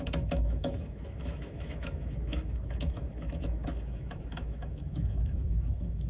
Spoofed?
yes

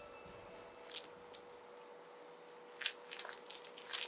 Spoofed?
no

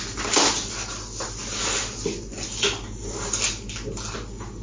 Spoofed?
no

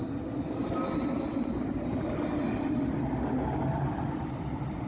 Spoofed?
no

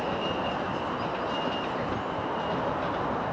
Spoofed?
no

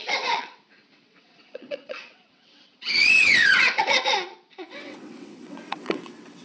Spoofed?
yes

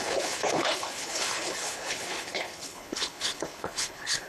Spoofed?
yes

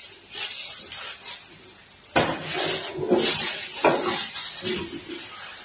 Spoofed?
no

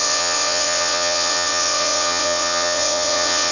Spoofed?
yes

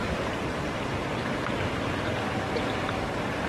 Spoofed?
yes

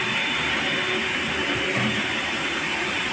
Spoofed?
yes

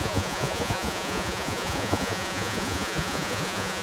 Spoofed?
yes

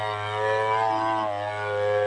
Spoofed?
no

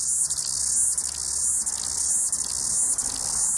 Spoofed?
no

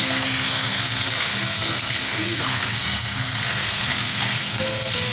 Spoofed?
yes